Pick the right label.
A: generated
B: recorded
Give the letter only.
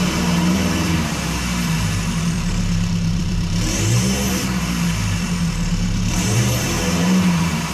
A